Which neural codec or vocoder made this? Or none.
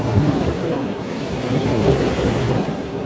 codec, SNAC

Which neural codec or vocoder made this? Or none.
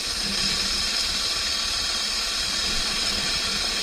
vocoder, BigVGAN v2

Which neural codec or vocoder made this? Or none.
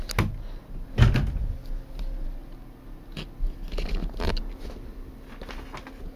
none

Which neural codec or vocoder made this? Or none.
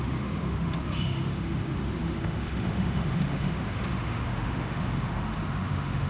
autoencoder, DAC-VAE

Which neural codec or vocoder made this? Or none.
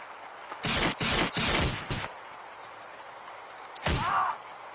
none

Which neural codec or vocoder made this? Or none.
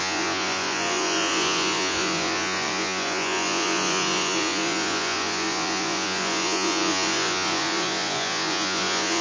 vocoder, Vocos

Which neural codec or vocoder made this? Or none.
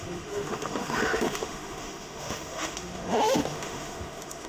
autoencoder, DAC-VAE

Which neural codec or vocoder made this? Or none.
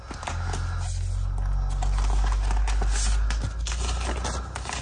none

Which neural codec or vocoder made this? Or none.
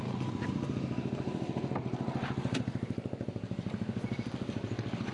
none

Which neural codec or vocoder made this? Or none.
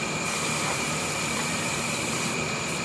vocoder, BigVGAN v2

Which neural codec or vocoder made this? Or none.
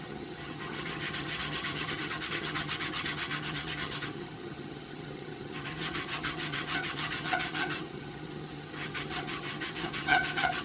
vocoder, HiFi-GAN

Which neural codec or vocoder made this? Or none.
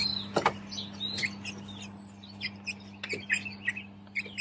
none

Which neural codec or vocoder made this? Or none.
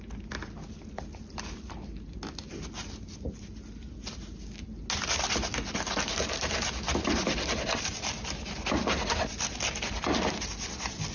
none